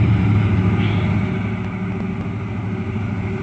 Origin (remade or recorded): recorded